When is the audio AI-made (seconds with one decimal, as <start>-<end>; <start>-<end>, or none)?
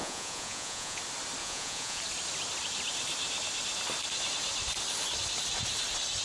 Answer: 0.0-1.0; 1.4-2.0